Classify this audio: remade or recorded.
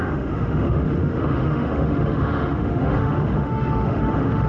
remade